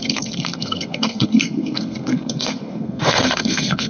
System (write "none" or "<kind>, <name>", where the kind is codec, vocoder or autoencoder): codec, SNAC